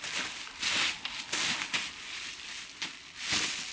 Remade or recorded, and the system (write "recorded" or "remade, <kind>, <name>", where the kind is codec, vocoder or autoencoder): recorded